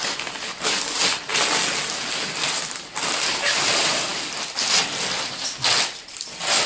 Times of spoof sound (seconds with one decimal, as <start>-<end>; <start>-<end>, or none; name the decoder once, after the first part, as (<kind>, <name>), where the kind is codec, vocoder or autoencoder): none